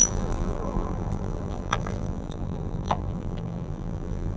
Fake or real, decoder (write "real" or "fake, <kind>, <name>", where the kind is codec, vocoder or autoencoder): fake, vocoder, BigVGAN v2